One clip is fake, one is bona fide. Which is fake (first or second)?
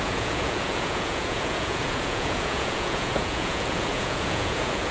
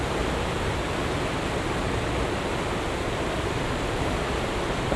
first